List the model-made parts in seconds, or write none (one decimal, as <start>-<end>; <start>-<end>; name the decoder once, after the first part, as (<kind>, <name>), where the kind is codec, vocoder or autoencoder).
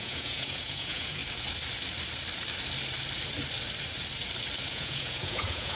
0.0-1.2 (vocoder, Vocos); 4.7-5.8